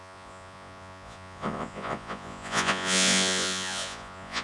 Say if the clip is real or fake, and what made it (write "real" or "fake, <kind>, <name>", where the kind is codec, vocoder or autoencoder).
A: fake, vocoder, Vocos